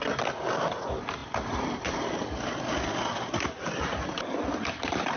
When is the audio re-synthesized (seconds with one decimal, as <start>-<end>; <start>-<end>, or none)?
none